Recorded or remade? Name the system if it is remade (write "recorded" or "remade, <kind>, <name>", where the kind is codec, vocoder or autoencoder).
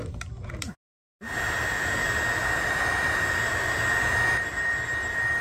recorded